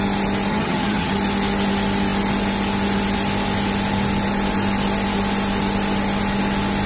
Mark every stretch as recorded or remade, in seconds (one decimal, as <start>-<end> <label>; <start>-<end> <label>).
0.0-0.5 recorded; 0.5-1.1 remade; 1.1-6.9 recorded